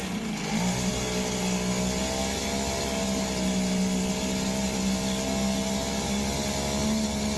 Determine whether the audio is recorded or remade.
recorded